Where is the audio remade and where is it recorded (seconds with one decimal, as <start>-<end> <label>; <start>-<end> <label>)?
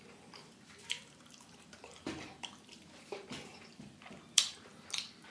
0.0-4.7 remade; 4.7-5.3 recorded